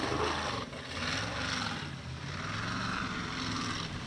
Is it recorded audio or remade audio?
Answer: recorded